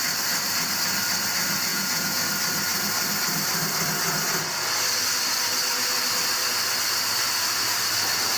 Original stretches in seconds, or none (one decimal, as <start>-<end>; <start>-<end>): 0.0-1.7; 2.2-8.4